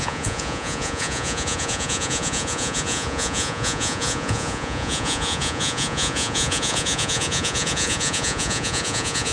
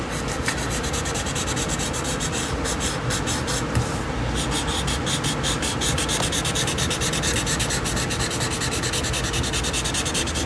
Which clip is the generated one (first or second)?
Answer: first